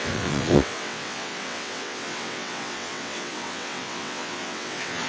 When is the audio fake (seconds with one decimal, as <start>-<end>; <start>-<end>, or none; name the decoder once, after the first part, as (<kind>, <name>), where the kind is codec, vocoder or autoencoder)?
0.0-5.1 (vocoder, WaveNeXt)